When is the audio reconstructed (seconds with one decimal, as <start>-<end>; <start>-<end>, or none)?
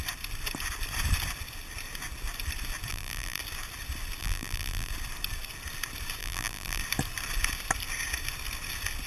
2.9-3.4; 4.2-4.9; 6.2-6.8